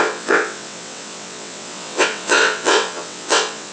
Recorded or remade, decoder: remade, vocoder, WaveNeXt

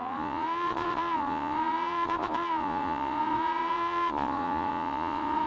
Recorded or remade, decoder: remade, vocoder, Vocos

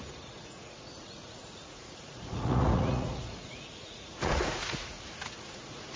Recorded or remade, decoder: remade, vocoder, Vocos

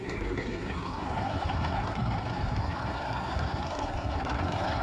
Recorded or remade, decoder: remade, codec, SNAC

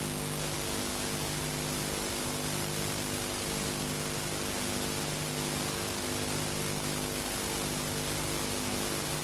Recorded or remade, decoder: recorded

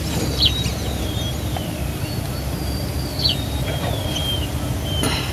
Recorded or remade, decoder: recorded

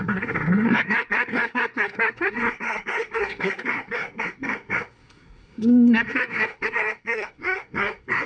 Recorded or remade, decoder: remade, codec, SNAC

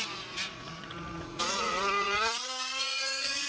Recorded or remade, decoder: remade, vocoder, Vocos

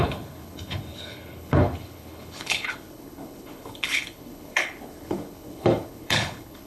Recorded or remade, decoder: remade, codec, HILCodec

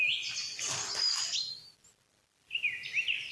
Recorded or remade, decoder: recorded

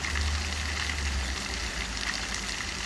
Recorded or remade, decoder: recorded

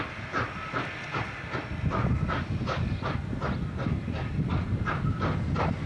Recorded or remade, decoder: recorded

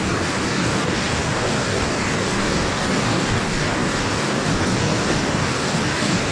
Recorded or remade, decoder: remade, codec, DAC